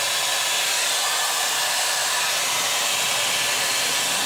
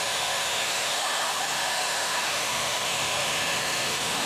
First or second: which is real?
first